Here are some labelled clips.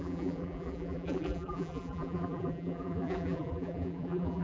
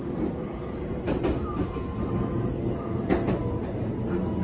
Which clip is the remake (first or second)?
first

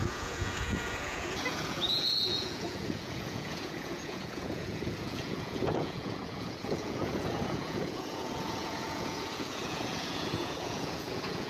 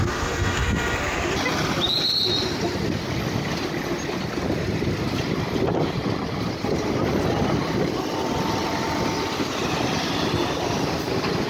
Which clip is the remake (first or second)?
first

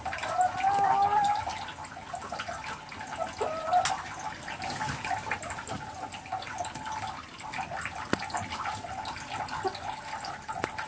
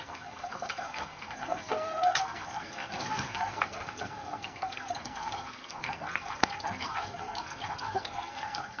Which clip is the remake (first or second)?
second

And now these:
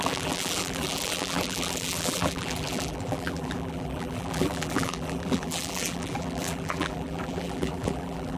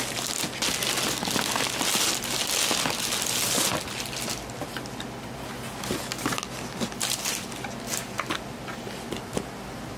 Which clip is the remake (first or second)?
first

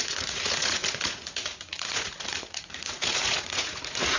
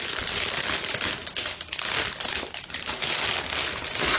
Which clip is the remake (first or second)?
first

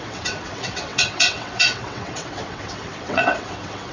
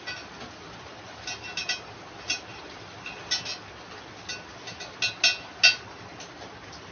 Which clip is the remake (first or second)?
first